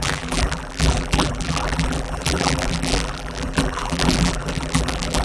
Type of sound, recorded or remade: remade